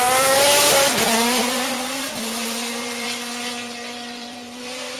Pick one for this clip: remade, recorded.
remade